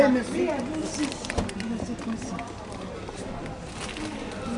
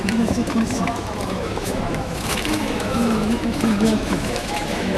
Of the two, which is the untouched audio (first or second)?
first